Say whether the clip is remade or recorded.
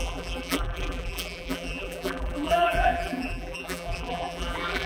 remade